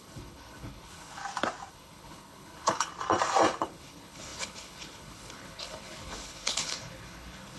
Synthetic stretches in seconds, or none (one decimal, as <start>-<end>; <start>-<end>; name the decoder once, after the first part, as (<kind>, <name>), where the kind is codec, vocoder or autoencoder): 0.0-1.2 (codec, HILCodec); 1.7-2.9; 3.6-7.6